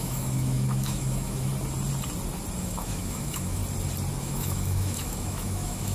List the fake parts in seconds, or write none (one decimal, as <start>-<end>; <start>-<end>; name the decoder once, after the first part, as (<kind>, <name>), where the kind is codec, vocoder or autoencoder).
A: 0.0-1.5 (autoencoder, DAC-VAE); 2.6-3.6; 4.2-5.9